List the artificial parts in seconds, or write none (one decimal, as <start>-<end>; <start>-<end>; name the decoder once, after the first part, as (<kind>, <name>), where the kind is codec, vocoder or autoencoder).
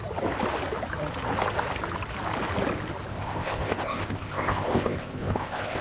3.1-5.8 (codec, ZipCodec)